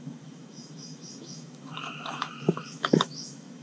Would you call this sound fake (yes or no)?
yes